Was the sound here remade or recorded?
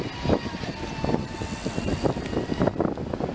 recorded